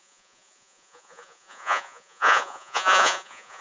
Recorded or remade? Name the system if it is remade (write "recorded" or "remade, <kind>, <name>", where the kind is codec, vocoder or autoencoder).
remade, vocoder, Vocos